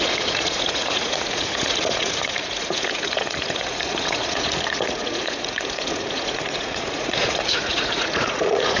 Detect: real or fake fake